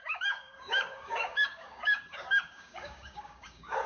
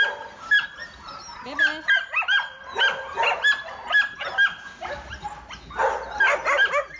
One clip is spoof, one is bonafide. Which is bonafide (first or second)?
second